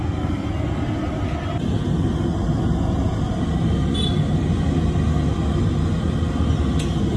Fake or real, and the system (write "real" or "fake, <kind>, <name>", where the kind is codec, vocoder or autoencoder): real